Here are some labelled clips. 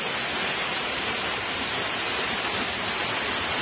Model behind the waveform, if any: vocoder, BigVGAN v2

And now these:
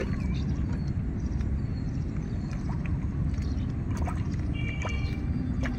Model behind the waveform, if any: none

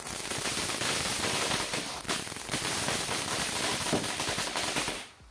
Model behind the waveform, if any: none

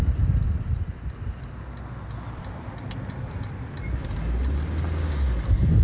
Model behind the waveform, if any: none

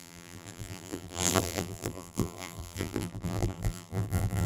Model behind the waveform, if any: vocoder, BigVGAN v2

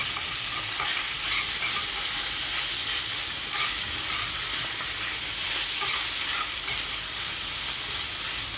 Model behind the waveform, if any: vocoder, BigVGAN v2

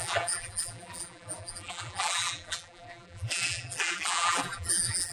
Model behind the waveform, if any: vocoder, BigVGAN v2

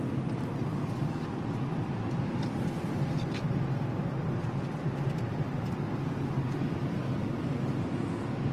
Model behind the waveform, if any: none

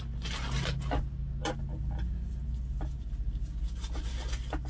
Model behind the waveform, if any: none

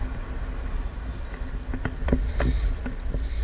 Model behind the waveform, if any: none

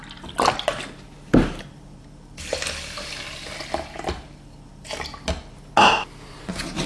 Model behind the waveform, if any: none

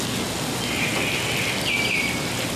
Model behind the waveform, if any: none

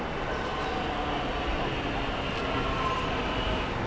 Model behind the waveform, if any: none